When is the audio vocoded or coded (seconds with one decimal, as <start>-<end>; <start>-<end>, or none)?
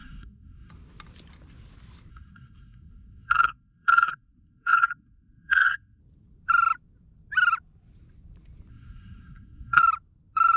0.0-0.7; 2.1-6.0; 8.7-9.8